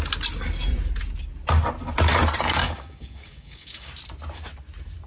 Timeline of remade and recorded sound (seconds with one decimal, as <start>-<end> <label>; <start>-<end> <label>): 0.0-2.6 recorded; 2.6-3.9 remade; 3.9-5.1 recorded